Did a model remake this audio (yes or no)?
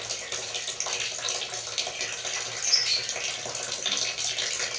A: no